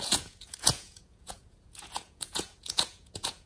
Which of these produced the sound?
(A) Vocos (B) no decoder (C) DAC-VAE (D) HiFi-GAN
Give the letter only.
A